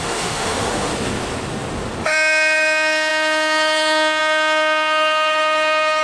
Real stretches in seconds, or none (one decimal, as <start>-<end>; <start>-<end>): 0.9-2.0